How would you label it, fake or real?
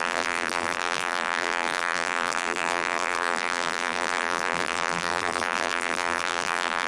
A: fake